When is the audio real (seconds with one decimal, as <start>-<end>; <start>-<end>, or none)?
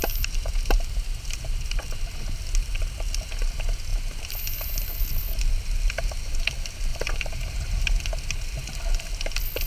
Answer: 1.8-6.9; 8.0-9.7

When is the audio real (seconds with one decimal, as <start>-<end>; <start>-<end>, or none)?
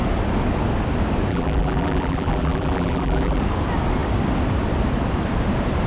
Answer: 0.0-1.3; 3.4-5.9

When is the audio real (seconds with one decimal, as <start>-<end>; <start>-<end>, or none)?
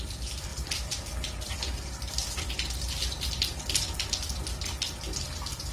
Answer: none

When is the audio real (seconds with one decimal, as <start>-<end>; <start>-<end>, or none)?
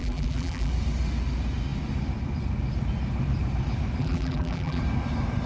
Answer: 0.7-4.0; 4.8-5.5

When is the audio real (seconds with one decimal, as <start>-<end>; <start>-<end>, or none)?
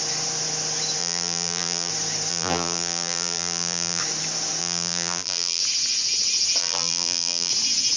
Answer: 0.0-1.0; 1.9-2.3; 4.0-4.6; 5.6-6.6; 7.5-8.0